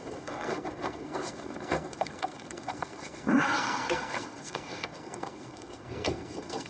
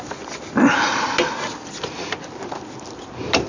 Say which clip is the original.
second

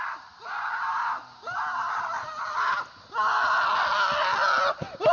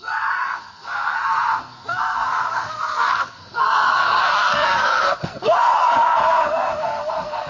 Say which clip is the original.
first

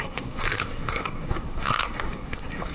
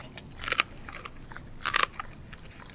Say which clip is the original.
second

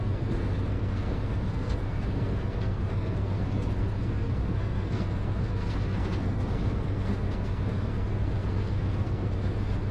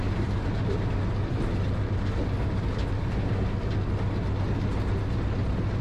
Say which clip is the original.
second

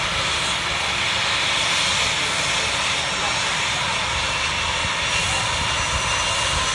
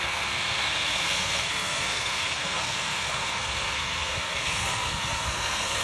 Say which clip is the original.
first